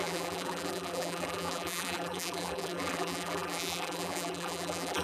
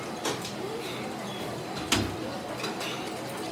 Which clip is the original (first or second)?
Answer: second